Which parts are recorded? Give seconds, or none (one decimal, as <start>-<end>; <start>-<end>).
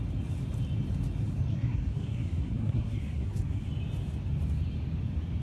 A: 0.0-1.5; 3.7-5.4